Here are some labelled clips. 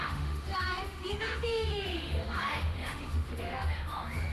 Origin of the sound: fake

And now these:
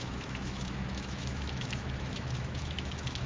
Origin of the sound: fake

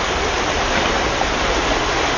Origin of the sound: real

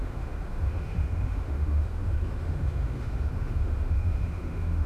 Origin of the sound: fake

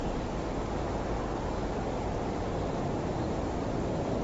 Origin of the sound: real